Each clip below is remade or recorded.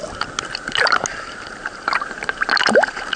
recorded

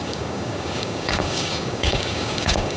remade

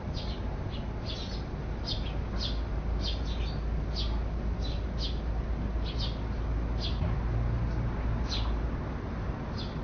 recorded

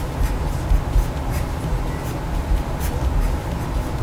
remade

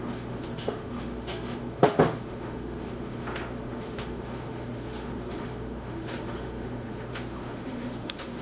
remade